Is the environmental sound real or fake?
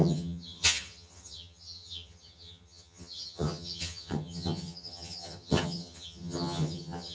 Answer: fake